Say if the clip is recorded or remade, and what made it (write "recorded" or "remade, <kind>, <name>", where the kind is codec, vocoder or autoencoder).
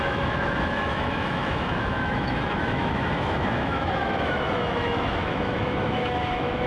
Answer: remade, autoencoder, DAC-VAE